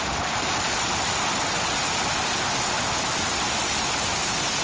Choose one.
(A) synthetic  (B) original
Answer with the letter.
B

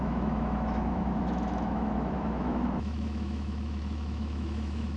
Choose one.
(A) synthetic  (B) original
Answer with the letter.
A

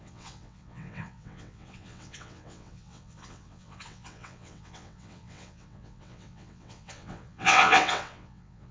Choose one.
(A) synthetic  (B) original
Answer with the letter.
A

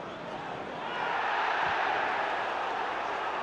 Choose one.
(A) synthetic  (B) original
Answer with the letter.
B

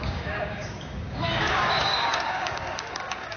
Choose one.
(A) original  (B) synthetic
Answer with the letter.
B